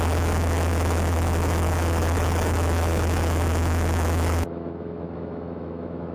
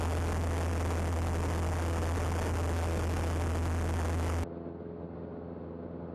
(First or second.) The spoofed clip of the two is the first